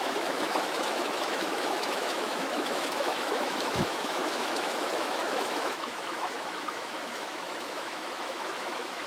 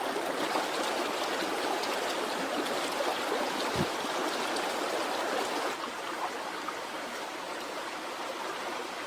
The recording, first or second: second